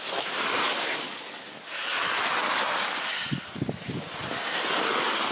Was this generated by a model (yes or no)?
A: no